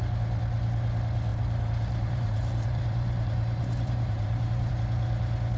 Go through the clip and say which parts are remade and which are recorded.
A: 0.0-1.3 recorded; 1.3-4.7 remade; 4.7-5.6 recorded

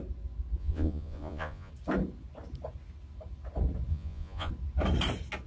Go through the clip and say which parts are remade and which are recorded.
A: 0.0-0.6 recorded; 0.6-1.7 remade; 1.7-3.9 recorded; 3.9-4.5 remade; 4.5-5.5 recorded

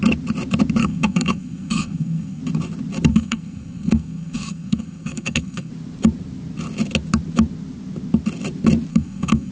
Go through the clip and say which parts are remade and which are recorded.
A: 0.0-0.8 recorded; 0.8-2.4 remade; 2.4-3.1 recorded; 3.1-5.7 remade; 5.7-8.9 recorded; 8.9-9.5 remade

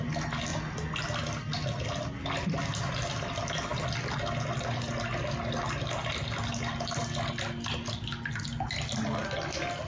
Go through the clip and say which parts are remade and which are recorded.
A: 0.0-9.9 recorded

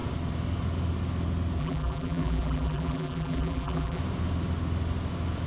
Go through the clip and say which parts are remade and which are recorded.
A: 0.0-1.6 recorded; 1.6-4.0 remade; 4.0-5.5 recorded